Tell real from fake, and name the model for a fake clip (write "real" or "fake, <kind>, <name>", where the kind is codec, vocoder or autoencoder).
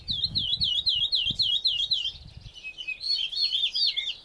real